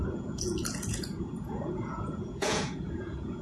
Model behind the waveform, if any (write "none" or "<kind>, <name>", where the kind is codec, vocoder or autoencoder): vocoder, Vocos